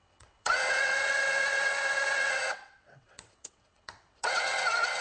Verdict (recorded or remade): remade